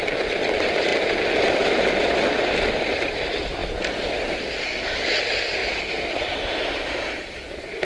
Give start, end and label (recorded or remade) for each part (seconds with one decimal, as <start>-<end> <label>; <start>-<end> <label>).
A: 0.0-0.9 remade; 0.9-1.5 recorded; 1.5-7.8 remade

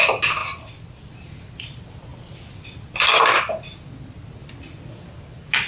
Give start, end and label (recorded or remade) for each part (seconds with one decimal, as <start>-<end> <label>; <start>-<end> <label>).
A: 0.0-0.4 recorded; 0.4-1.1 remade; 1.1-2.1 recorded; 2.1-3.4 remade; 3.4-5.7 recorded

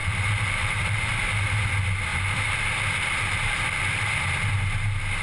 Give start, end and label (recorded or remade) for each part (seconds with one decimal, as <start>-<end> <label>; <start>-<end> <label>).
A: 0.0-1.1 remade; 1.1-5.2 recorded

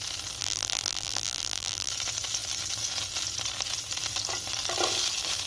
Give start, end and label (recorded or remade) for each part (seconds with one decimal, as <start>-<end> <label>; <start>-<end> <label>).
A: 0.0-0.4 recorded; 0.4-1.9 remade; 1.9-5.5 recorded